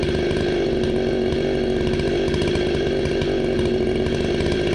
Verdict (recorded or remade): recorded